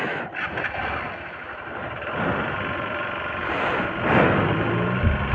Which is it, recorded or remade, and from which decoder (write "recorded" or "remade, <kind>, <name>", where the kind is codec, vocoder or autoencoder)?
recorded